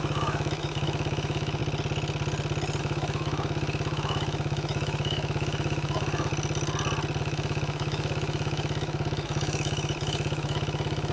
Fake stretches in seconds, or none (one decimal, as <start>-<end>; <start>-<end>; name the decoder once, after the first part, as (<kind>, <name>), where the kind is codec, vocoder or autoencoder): 0.0-1.6 (autoencoder, DAC-VAE); 2.8-6.3; 7.2-11.1